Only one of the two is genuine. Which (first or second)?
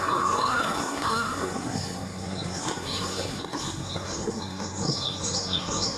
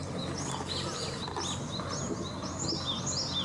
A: second